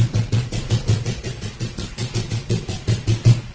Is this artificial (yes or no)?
yes